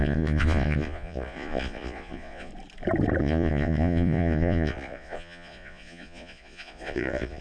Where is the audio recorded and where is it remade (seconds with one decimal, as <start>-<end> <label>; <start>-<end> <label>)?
0.0-2.5 remade; 2.5-3.2 recorded; 3.2-7.4 remade